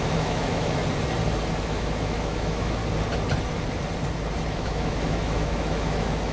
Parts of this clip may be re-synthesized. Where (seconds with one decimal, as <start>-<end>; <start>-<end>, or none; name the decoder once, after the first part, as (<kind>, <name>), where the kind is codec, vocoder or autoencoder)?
0.0-0.8 (autoencoder, DAC-VAE); 1.6-2.8; 4.5-6.3